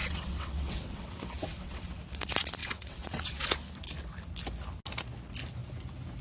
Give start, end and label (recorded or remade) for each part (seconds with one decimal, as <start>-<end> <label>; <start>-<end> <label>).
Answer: 0.0-2.0 remade; 2.0-2.6 recorded; 2.6-3.5 remade; 3.5-6.2 recorded